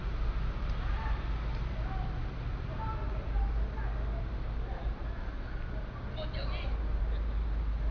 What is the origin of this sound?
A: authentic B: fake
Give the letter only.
A